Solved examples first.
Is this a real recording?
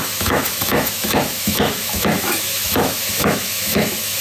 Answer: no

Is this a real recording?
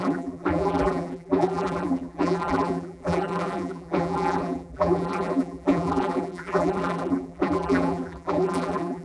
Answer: no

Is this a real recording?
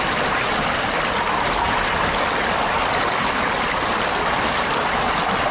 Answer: yes